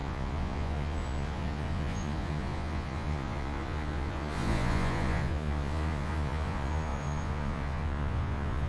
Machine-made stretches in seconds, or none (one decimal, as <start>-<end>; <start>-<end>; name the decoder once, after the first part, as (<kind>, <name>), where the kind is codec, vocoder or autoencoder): 0.0-8.7 (vocoder, Vocos)